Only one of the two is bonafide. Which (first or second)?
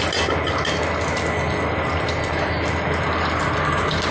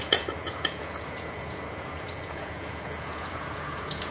first